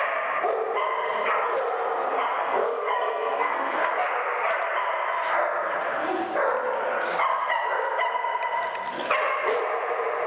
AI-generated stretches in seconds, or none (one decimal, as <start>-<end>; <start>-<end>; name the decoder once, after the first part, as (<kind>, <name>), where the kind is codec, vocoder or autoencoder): 2.3-3.9 (codec, SNAC)